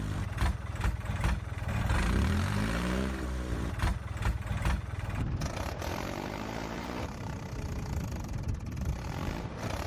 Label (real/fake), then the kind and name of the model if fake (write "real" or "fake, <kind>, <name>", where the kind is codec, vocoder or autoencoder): fake, vocoder, BigVGAN v2